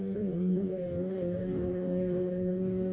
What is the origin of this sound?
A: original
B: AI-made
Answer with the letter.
B